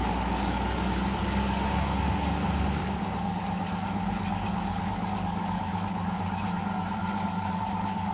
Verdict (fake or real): fake